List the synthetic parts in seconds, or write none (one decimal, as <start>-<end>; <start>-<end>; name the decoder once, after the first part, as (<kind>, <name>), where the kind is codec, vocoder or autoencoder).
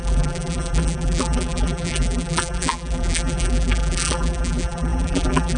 0.0-5.6 (vocoder, BigVGAN v2)